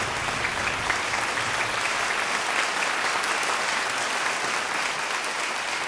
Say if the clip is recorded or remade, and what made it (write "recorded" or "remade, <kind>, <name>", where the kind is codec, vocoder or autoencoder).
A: recorded